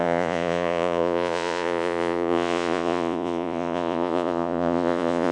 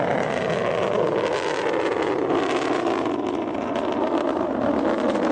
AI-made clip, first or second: first